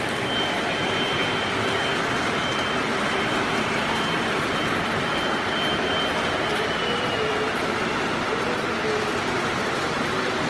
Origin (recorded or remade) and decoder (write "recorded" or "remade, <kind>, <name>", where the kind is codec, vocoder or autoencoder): recorded